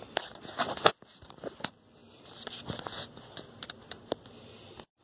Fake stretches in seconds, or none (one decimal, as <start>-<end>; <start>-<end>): none